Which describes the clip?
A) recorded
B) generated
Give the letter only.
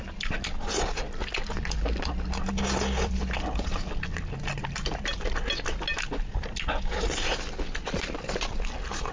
A